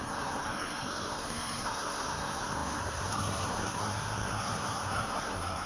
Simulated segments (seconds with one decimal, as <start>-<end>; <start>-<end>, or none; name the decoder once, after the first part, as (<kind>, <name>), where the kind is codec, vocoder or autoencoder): 0.0-5.7 (codec, SNAC)

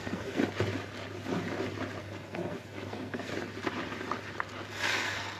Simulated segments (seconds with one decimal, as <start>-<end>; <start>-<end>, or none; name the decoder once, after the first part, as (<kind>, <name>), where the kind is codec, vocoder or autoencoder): 0.0-0.4 (codec, SNAC); 2.0-3.3; 4.7-5.4

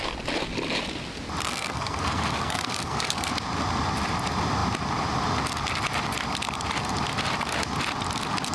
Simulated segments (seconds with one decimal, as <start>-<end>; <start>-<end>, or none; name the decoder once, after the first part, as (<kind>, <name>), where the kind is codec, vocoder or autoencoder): 1.5-3.3 (codec, SNAC)

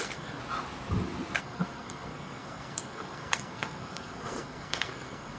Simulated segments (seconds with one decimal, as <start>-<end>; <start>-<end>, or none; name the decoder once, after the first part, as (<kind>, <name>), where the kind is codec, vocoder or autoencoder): 0.0-0.4 (codec, SNAC); 1.4-5.4

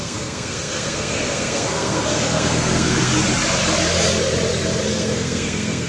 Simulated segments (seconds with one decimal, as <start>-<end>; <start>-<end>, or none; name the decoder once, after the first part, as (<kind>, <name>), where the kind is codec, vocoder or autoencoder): 0.0-3.1 (codec, SNAC); 4.9-5.9